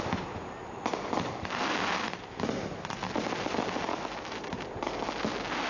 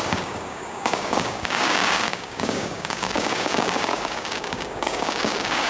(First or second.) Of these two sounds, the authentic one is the first